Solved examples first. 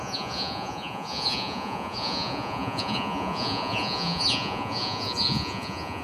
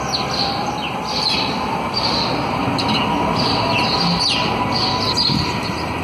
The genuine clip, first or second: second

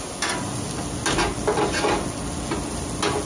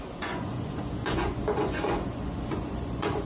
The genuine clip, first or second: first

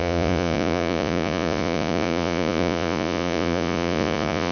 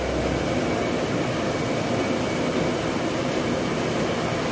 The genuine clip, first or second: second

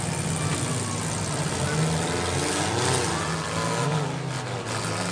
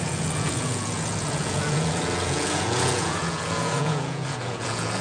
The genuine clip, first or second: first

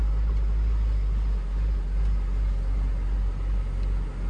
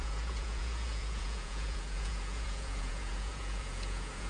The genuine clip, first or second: first